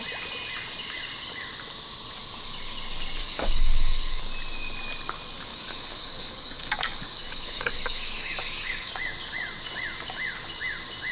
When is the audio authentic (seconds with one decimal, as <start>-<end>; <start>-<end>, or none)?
0.0-3.2; 4.2-5.5; 8.9-11.1